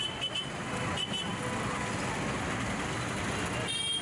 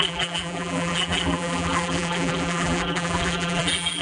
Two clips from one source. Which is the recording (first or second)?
first